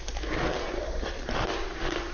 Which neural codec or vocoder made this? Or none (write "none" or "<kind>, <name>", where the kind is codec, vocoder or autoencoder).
none